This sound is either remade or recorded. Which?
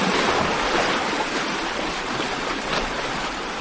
recorded